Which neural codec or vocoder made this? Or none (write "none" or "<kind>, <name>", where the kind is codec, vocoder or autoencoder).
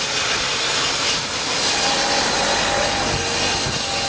none